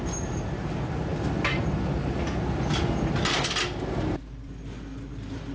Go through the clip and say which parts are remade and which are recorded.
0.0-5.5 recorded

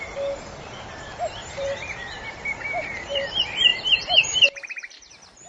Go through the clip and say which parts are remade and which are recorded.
0.0-1.4 recorded; 1.4-3.3 remade; 3.3-3.7 recorded; 3.7-5.1 remade; 5.1-5.5 recorded

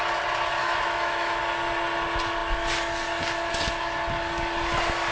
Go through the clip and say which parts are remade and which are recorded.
0.0-0.6 recorded; 0.6-1.4 remade; 1.4-5.1 recorded

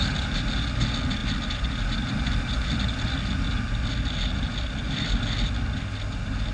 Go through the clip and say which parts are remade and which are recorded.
0.0-6.5 recorded

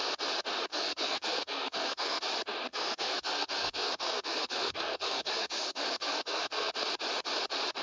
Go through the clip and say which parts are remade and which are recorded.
0.0-0.7 recorded; 0.7-2.2 remade; 2.2-2.7 recorded; 2.7-6.7 remade; 6.7-7.8 recorded

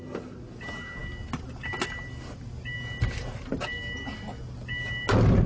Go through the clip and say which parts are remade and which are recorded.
0.0-5.5 recorded

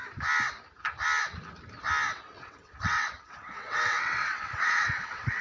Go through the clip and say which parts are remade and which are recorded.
0.0-2.1 recorded; 2.1-5.4 remade

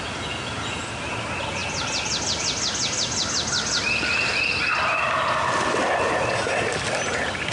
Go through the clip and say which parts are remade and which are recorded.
0.0-7.5 recorded